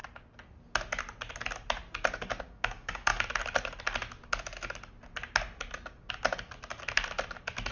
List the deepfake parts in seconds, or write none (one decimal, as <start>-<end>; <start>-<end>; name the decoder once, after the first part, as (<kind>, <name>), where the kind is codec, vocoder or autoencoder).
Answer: 2.4-3.1 (codec, DAC)